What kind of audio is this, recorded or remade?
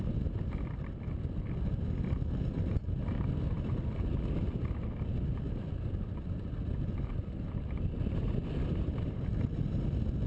recorded